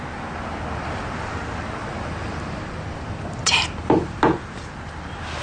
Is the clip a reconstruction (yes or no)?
no